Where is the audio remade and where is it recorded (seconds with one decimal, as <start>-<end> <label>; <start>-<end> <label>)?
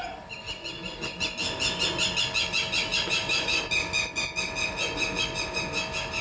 0.0-2.9 recorded; 2.9-3.6 remade; 3.6-6.2 recorded